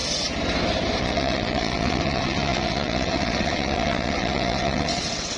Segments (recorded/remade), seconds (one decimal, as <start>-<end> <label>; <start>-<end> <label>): 0.0-1.0 recorded; 1.0-5.4 remade